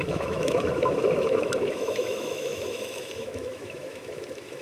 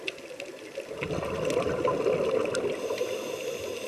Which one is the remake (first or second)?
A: first